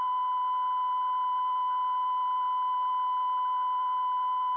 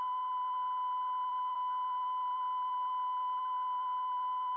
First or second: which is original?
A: first